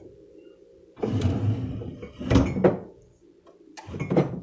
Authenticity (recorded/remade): recorded